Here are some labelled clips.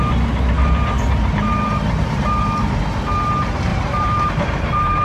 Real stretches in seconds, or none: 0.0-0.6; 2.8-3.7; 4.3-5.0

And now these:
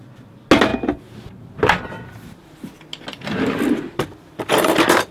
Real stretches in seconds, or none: 0.0-5.1

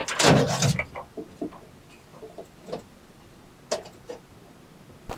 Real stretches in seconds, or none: 0.0-2.1; 3.4-5.2

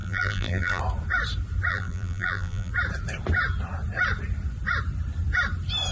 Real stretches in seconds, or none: 0.8-1.7; 2.7-5.9